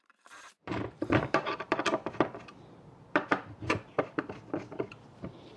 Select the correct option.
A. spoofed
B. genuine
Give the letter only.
A